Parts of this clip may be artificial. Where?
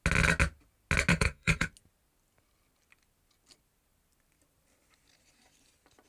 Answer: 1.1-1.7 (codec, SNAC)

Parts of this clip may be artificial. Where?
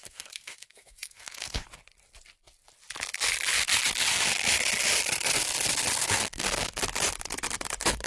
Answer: 0.0-1.6 (codec, SNAC); 6.0-6.8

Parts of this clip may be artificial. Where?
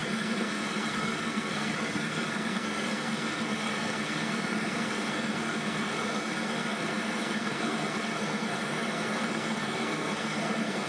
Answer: 0.0-10.9 (codec, SNAC)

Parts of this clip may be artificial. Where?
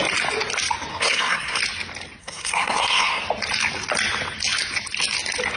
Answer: 0.9-1.6 (codec, SNAC); 2.2-3.2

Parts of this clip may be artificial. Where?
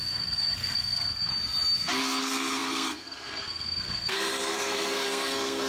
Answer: 0.0-1.3 (codec, SNAC); 2.2-5.7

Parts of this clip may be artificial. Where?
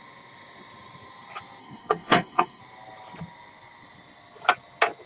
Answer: 1.6-2.6 (codec, SNAC)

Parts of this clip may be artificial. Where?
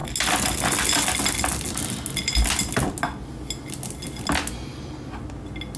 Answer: none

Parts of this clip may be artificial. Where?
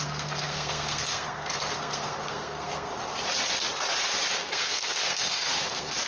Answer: 0.0-2.9 (codec, SNAC); 4.3-6.1